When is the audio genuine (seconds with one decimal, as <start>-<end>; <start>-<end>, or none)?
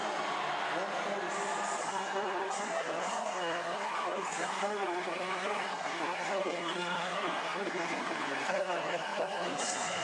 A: 0.0-1.8